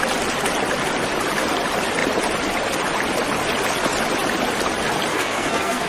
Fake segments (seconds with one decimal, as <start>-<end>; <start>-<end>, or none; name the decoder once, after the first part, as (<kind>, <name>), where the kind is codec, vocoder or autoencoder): 5.1-5.9 (codec, SNAC)